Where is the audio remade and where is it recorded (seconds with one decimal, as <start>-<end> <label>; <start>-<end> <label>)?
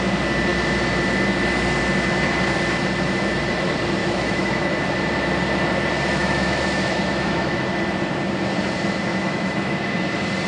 0.0-4.0 recorded; 4.0-4.8 remade; 4.8-6.2 recorded; 6.2-7.6 remade; 7.6-9.1 recorded; 9.1-9.8 remade; 9.8-10.5 recorded